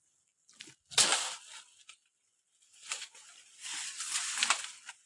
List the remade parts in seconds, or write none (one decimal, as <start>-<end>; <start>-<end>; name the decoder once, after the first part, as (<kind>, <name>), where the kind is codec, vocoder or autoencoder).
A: none